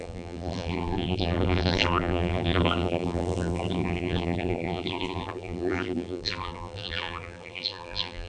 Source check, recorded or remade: remade